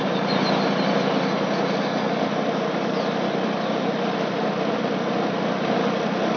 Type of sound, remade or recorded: recorded